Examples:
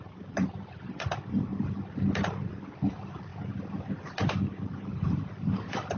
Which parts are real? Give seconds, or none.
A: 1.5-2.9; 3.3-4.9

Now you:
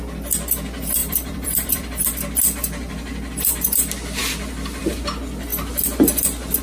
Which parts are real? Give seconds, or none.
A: 0.0-1.0; 2.0-6.6

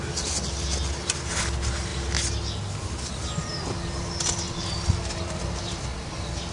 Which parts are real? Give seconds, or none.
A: 0.0-6.5